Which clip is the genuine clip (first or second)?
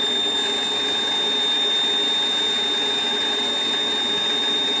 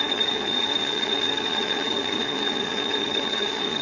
first